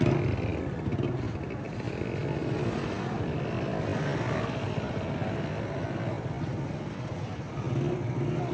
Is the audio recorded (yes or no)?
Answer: yes